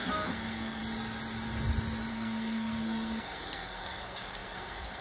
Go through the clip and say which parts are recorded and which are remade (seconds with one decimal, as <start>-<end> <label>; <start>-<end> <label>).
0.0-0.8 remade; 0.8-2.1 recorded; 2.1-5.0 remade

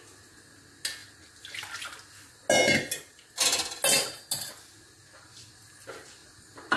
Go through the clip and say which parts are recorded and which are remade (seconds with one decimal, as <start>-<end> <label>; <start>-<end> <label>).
0.0-6.8 recorded

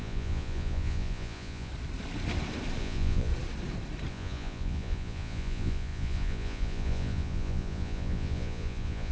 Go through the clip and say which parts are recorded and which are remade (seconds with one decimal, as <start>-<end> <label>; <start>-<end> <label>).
0.0-1.7 remade; 1.7-2.8 recorded; 2.8-3.3 remade; 3.3-4.1 recorded; 4.1-9.1 remade